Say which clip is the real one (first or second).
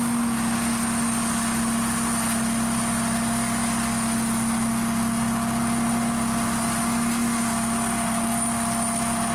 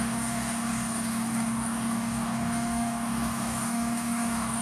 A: first